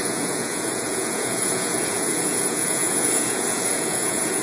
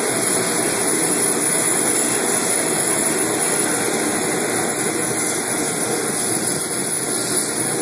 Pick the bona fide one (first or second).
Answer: second